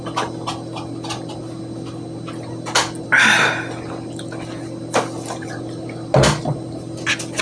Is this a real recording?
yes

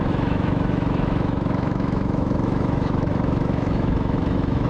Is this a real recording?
no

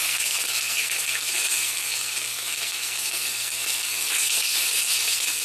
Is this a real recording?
no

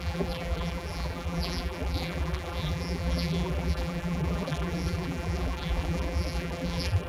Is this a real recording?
no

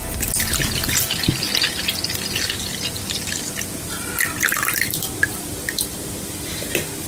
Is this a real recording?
yes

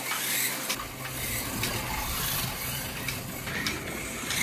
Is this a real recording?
yes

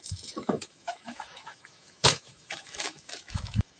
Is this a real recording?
no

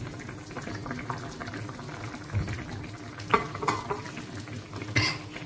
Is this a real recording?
yes